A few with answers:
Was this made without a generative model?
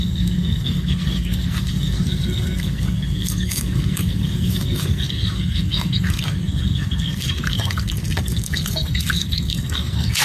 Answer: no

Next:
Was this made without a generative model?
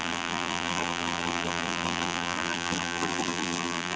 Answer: no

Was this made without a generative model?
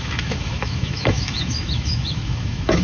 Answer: no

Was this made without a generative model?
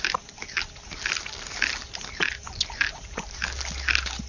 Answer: yes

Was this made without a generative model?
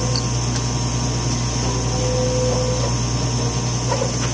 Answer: yes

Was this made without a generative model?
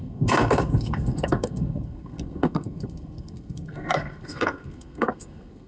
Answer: no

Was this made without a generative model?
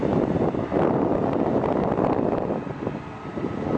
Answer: yes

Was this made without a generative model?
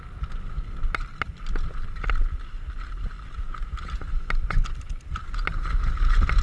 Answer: yes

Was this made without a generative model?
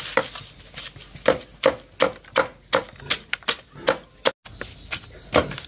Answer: yes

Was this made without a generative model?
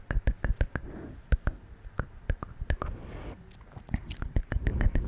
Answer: yes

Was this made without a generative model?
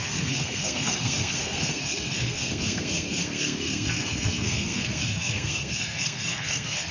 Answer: no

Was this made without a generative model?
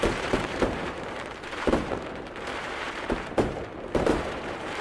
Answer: no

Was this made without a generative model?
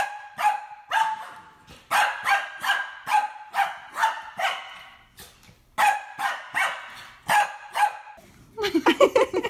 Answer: yes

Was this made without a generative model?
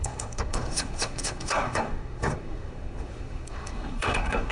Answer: no